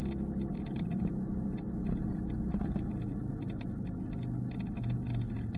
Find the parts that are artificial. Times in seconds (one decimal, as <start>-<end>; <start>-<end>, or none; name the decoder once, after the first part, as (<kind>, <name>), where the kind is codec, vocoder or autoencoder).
none